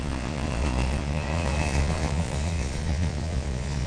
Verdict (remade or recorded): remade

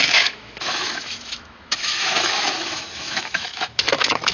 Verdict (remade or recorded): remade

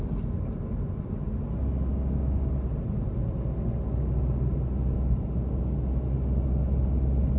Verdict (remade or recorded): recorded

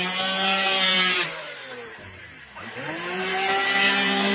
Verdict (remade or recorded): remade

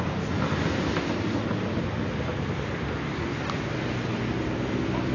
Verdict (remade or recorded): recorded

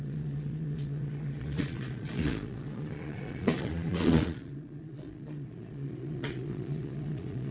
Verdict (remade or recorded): remade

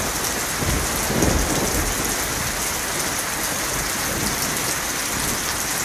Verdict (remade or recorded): recorded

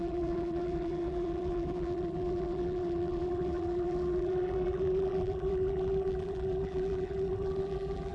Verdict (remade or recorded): remade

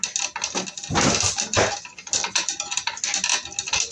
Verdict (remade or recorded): recorded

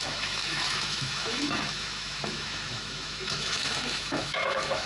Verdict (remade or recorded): remade